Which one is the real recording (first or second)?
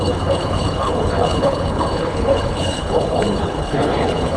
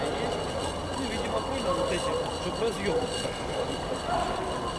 second